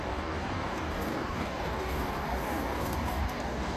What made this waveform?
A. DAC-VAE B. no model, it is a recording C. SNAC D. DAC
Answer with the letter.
D